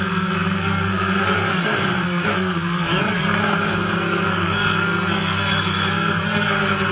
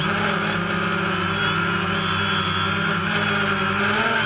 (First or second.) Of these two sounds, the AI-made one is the first